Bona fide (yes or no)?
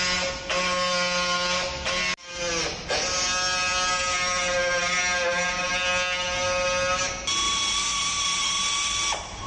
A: yes